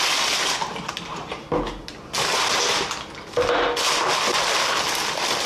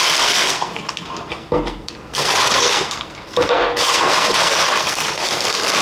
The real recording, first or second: first